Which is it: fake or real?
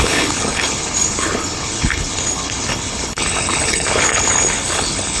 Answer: fake